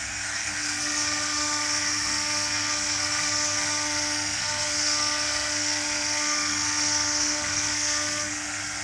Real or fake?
fake